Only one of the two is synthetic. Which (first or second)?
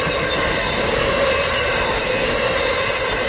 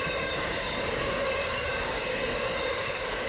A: second